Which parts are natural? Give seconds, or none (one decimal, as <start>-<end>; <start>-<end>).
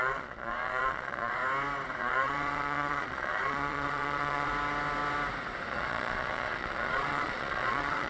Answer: 1.4-2.0; 4.5-5.7